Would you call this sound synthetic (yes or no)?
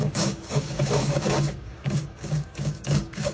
yes